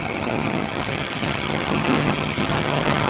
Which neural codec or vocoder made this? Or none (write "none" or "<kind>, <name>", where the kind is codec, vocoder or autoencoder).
vocoder, HiFi-GAN